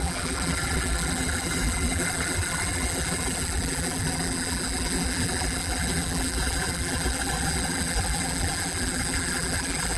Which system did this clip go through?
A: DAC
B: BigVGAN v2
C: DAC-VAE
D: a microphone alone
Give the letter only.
B